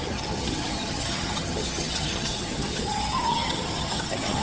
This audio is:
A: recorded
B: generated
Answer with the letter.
B